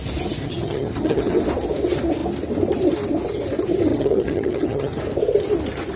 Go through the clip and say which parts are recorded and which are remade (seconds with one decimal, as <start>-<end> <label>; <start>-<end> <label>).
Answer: 0.0-0.4 recorded; 0.4-1.4 remade; 1.4-3.9 recorded; 3.9-5.0 remade; 5.0-6.0 recorded